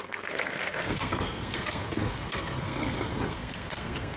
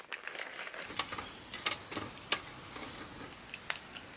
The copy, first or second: first